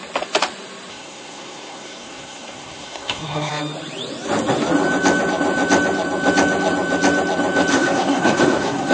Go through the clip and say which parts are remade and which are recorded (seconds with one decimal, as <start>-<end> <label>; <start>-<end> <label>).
0.0-0.9 recorded; 0.9-3.5 remade; 3.5-7.7 recorded; 7.7-8.9 remade